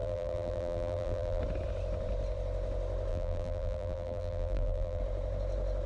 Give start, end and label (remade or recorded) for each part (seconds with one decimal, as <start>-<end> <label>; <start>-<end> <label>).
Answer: 0.0-1.4 remade; 1.4-3.1 recorded; 3.1-5.0 remade; 5.0-5.9 recorded